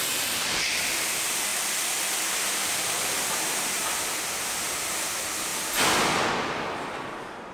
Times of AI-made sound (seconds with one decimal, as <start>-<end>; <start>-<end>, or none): 0.0-1.5; 3.6-5.5; 6.3-7.5